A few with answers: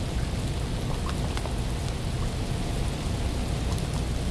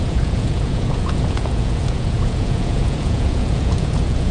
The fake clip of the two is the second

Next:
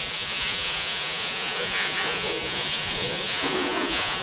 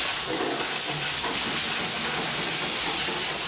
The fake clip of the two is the first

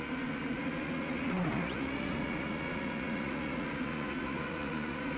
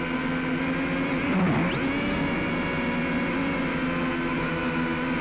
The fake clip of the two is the first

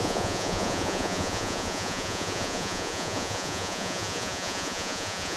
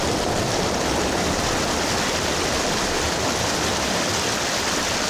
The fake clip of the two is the first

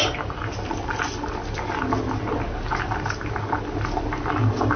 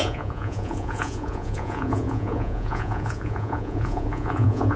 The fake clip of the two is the second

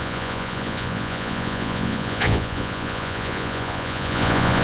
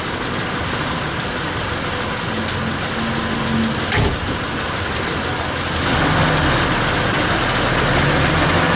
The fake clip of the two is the first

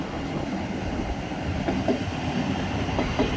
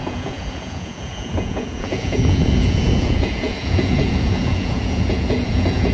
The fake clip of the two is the second